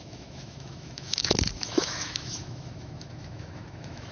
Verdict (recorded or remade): remade